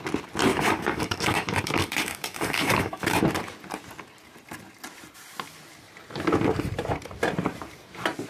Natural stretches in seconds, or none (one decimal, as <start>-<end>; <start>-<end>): 0.0-0.5; 3.2-8.3